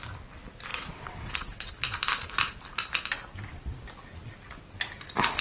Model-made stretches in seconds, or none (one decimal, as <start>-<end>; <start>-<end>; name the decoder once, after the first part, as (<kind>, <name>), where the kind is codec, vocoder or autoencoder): 0.7-1.7 (vocoder, WaveNeXt)